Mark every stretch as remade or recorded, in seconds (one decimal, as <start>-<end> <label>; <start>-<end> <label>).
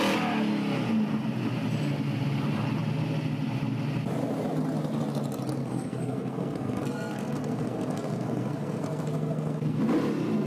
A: 0.0-5.6 recorded; 5.6-9.8 remade; 9.8-10.5 recorded